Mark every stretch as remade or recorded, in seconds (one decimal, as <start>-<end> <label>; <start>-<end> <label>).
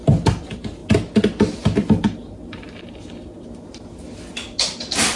0.0-5.2 recorded